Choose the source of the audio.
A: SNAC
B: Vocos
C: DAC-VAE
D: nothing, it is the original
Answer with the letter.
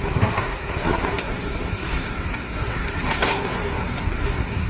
A